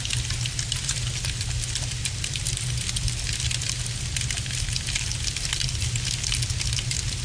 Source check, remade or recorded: recorded